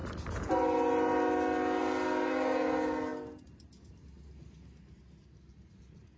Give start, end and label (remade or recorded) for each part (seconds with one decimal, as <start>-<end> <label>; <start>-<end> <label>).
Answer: 0.0-6.2 recorded